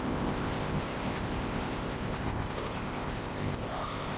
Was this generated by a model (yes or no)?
yes